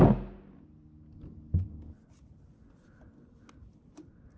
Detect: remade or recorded recorded